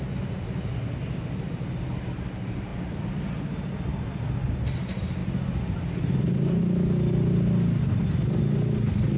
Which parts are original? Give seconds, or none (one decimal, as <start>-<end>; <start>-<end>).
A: 0.0-9.2